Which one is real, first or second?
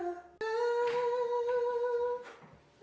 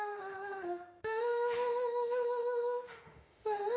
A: first